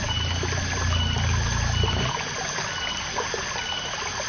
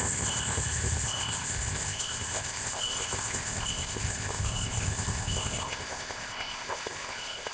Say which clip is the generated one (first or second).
second